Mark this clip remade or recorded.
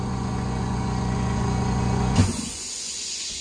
remade